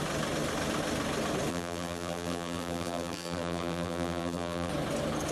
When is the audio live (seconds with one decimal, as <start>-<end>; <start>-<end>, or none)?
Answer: 0.0-1.5; 4.7-5.3

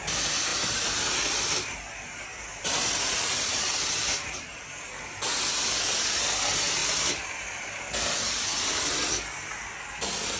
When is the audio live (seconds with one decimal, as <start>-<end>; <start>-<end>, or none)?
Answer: 0.0-0.5; 1.0-2.3; 4.9-10.4